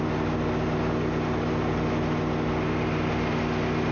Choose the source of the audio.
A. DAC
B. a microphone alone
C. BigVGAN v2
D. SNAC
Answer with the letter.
B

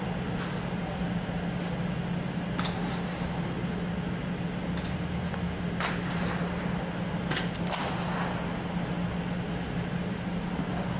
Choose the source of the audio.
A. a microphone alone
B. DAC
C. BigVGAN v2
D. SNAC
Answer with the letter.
A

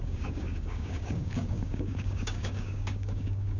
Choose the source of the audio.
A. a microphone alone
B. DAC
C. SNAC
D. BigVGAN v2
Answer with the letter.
B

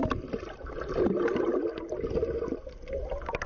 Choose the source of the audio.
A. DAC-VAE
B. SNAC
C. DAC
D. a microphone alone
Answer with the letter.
D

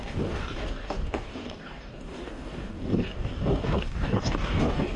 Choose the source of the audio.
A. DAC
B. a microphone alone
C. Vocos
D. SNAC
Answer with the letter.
A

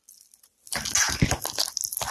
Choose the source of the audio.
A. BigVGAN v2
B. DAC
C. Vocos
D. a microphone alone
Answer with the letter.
D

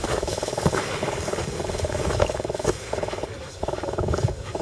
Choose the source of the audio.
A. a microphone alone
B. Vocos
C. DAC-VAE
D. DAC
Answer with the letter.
D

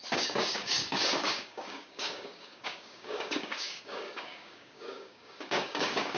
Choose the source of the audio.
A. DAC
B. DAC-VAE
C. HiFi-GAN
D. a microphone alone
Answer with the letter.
A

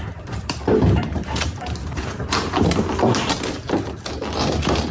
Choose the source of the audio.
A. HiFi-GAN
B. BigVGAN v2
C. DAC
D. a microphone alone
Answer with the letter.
D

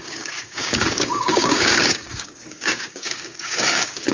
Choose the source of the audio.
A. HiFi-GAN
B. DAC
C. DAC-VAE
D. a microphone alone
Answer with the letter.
B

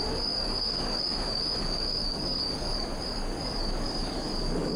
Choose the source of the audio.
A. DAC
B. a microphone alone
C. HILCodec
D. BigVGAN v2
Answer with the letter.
A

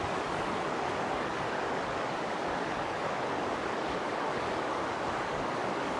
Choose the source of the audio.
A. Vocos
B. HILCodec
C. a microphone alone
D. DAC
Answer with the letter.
D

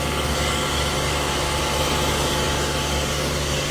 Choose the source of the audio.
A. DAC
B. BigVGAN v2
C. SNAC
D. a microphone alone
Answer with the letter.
A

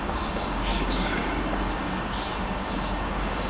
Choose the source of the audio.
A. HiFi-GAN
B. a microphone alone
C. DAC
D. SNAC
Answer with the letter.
C